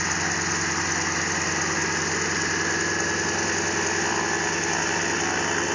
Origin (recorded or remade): recorded